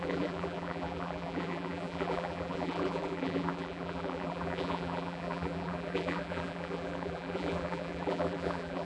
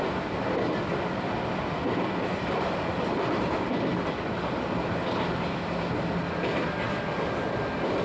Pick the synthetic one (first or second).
first